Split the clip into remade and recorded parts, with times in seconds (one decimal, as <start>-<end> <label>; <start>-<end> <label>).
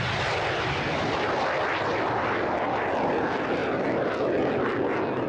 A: 0.0-5.3 recorded